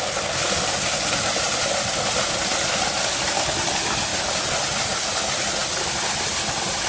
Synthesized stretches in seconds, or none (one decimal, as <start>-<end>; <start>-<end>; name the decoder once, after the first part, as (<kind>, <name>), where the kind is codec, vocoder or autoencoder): none